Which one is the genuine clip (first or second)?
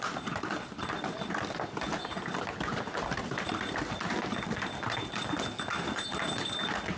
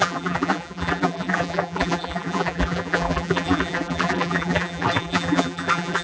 first